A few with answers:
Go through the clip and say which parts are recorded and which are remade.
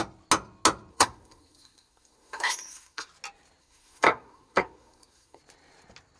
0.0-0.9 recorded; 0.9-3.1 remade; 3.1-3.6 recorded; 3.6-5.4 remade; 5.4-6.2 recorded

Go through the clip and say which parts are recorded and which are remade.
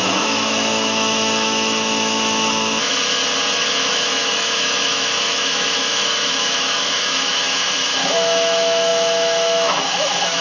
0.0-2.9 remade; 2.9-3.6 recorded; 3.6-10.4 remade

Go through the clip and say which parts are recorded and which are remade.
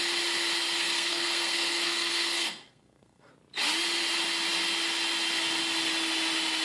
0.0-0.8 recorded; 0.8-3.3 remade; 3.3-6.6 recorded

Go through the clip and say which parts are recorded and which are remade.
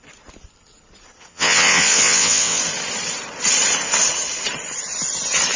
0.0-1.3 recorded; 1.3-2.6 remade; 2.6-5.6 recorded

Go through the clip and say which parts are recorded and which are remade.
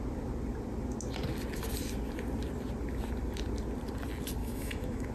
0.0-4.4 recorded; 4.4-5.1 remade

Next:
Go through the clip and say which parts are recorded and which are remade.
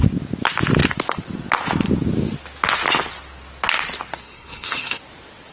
0.0-4.2 recorded; 4.2-5.0 remade; 5.0-5.5 recorded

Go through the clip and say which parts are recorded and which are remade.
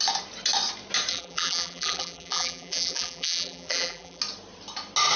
0.0-1.1 recorded; 1.1-4.2 remade; 4.2-5.2 recorded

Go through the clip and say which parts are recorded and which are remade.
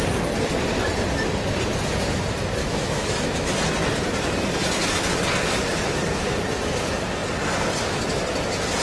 0.0-2.6 recorded; 2.6-3.5 remade; 3.5-8.8 recorded